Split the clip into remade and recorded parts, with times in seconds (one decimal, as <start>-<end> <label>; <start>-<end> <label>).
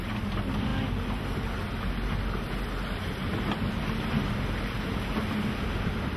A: 0.0-6.2 recorded